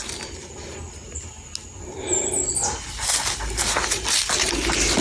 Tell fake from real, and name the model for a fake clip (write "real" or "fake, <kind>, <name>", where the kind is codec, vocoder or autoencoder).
real